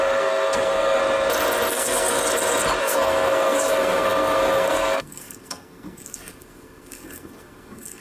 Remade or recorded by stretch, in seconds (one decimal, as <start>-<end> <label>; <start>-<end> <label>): 0.0-1.0 remade; 1.0-1.7 recorded; 1.7-2.2 remade; 2.2-2.8 recorded; 2.8-8.0 remade